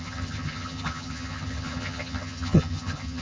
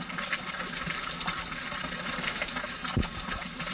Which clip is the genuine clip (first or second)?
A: second